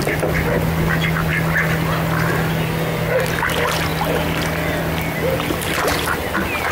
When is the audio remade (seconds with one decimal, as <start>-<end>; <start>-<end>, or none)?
none